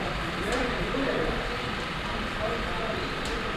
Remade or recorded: remade